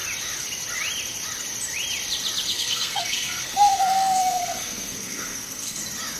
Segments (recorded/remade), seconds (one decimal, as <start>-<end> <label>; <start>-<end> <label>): 0.0-2.5 recorded; 2.5-5.8 remade; 5.8-6.2 recorded